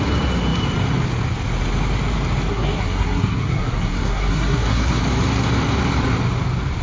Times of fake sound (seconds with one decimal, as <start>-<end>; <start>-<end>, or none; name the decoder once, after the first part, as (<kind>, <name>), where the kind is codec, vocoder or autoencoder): 2.5-5.0 (codec, SNAC)